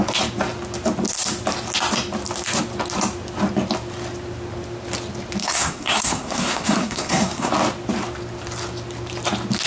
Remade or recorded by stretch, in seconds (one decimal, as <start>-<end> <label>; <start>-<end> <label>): 0.0-5.4 recorded; 5.4-7.5 remade; 7.5-9.7 recorded